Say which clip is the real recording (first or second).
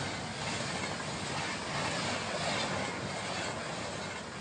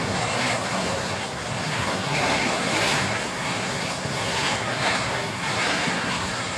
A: first